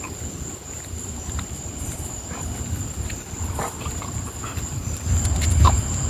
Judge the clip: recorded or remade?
recorded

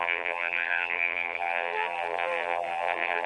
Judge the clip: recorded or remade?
remade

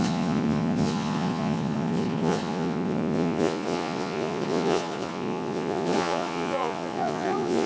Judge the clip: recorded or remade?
remade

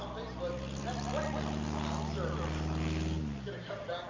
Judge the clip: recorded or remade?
recorded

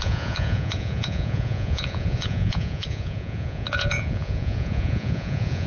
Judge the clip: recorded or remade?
remade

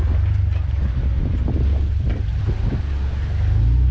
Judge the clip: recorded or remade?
recorded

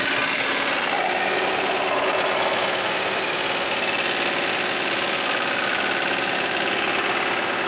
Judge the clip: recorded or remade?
recorded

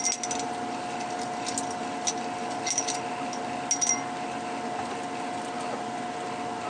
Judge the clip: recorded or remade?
recorded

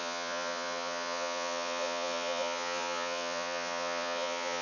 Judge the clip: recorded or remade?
remade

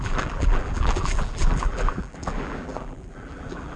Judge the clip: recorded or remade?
remade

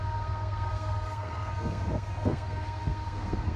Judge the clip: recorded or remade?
remade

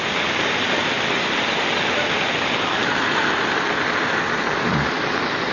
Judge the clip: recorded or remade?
recorded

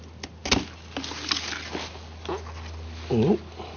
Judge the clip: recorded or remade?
recorded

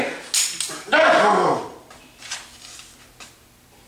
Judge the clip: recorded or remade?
recorded